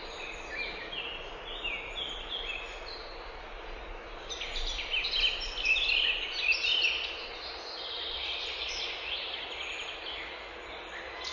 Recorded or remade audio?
recorded